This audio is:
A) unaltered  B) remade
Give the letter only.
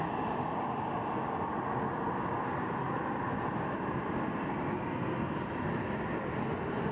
A